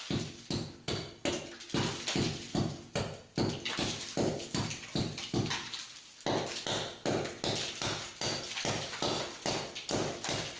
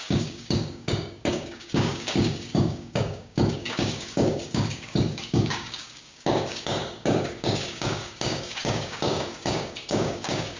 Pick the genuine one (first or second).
first